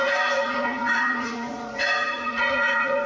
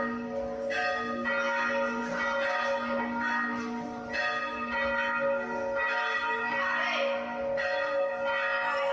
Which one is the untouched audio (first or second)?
second